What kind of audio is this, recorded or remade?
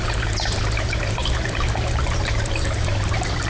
remade